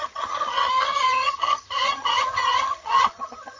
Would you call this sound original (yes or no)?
no